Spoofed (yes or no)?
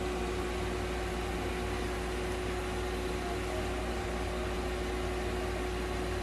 no